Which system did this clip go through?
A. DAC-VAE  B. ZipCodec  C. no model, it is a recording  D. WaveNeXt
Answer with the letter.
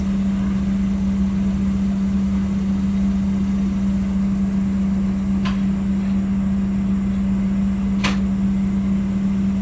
C